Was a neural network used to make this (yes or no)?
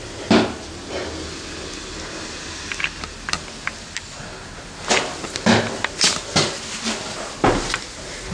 no